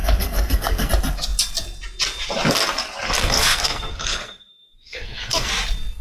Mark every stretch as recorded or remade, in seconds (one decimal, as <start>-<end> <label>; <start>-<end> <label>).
0.0-0.9 remade; 0.9-3.2 recorded; 3.2-5.5 remade; 5.5-6.0 recorded